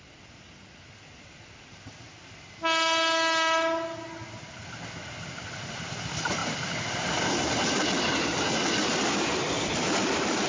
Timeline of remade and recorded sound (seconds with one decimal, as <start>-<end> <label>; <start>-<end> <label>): 0.0-10.5 recorded